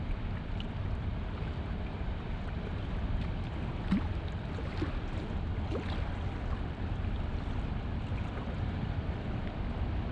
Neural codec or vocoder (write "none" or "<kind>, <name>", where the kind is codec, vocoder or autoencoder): vocoder, BigVGAN v2